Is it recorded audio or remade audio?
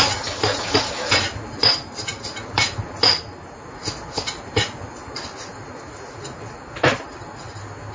recorded